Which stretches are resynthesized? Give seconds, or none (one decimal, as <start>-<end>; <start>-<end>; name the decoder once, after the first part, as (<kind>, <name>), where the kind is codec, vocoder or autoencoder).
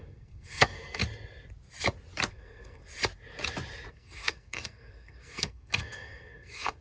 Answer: 0.0-1.0 (codec, SNAC); 2.3-2.8; 3.9-6.8